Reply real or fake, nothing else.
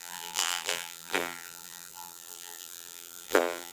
fake